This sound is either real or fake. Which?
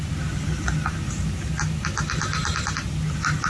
real